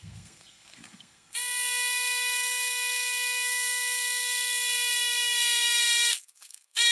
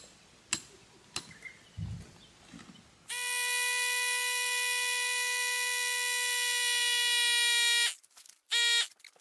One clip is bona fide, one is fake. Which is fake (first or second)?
first